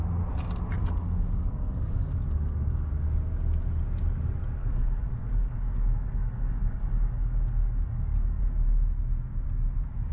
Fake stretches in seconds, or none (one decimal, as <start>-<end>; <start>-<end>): 0.8-2.9; 4.6-8.4